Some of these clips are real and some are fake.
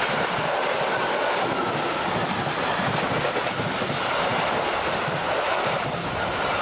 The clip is real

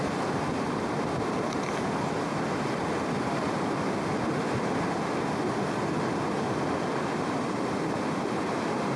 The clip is real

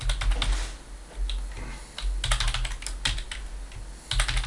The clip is real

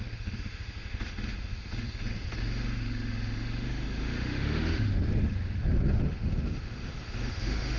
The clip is fake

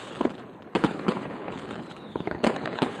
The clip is fake